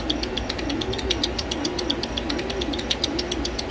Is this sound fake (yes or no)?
no